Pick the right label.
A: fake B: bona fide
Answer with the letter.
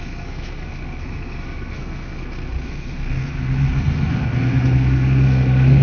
A